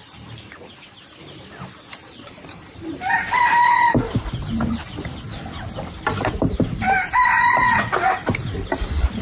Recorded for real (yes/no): no